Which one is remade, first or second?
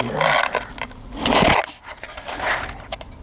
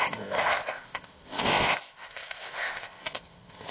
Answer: second